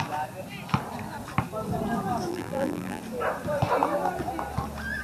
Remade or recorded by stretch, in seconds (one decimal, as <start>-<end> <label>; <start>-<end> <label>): 0.0-2.3 recorded; 2.3-3.0 remade; 3.0-5.0 recorded